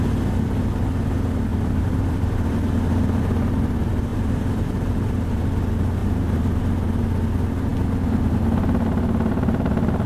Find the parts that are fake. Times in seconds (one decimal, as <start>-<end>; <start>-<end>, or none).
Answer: 1.5-3.2; 4.1-5.4; 6.0-6.6